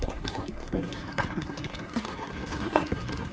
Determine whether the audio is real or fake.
fake